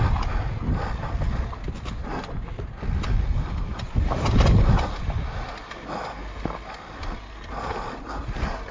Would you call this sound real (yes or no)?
yes